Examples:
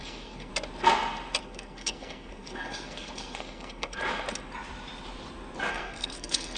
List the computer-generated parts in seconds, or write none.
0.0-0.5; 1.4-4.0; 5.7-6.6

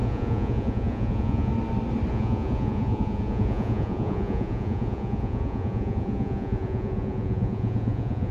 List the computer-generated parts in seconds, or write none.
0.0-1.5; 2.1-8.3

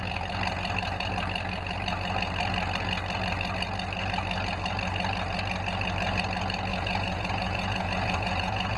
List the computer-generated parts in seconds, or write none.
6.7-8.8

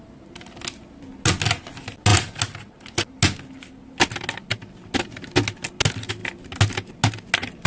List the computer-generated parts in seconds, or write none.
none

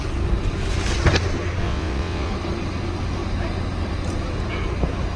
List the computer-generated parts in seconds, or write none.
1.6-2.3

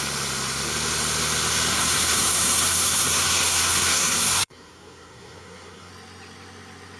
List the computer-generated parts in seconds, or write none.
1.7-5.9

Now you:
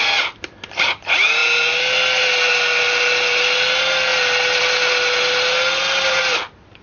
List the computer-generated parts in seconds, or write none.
none